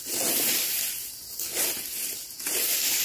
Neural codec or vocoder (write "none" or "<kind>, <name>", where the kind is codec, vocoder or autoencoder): none